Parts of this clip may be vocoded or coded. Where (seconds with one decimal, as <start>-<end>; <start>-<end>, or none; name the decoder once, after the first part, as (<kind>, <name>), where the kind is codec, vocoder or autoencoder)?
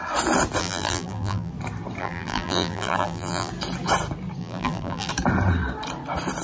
0.6-1.5 (vocoder, BigVGAN v2); 2.0-3.5; 4.4-5.1